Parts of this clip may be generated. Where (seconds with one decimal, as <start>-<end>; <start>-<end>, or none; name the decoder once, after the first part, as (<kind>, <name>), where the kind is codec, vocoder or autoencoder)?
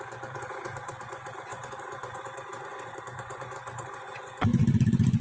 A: 0.0-4.5 (vocoder, Vocos)